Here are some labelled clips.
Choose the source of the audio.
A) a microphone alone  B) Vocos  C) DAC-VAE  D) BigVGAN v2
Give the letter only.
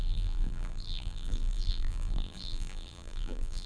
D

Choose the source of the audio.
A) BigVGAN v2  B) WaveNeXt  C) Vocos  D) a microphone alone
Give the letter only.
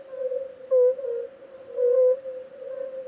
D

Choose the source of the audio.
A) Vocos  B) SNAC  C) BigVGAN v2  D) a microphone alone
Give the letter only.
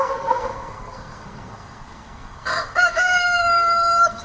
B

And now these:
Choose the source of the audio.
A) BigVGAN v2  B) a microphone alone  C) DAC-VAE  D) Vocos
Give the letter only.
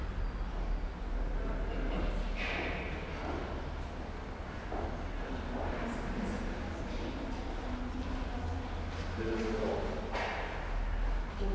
B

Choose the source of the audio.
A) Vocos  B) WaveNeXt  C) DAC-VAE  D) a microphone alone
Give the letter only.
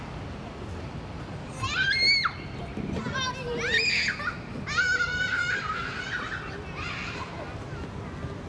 D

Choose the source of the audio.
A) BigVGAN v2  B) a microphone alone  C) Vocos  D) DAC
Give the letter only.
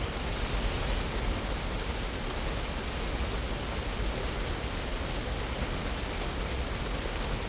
B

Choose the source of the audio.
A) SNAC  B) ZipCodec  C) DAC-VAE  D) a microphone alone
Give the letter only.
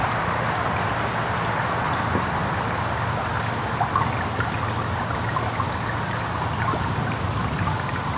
D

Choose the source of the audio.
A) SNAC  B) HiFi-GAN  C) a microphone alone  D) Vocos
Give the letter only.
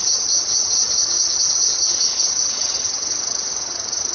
B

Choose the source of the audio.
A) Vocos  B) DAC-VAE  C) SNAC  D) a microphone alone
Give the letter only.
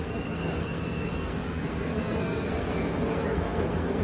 C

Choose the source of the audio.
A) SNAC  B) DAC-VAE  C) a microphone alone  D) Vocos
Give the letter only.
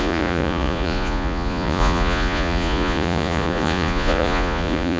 D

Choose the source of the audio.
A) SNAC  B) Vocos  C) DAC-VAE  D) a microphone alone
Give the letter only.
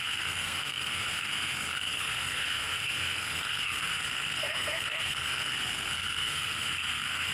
A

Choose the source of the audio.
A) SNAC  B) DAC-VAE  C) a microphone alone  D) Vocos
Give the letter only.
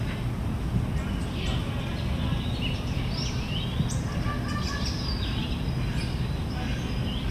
C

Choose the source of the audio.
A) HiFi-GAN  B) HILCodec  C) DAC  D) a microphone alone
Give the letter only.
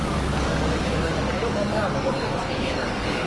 C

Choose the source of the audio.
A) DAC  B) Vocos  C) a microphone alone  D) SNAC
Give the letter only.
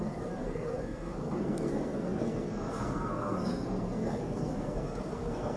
D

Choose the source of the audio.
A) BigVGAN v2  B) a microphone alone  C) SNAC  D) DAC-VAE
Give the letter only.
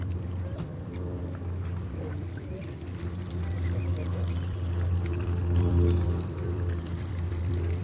A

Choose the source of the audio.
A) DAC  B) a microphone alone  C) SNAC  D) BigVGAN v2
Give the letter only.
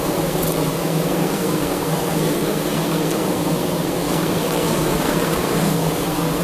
C